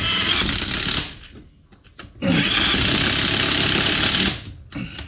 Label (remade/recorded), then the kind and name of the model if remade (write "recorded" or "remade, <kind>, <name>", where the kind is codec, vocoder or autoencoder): recorded